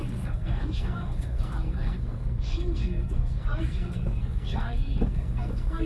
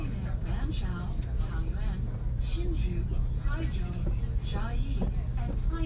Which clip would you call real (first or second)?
second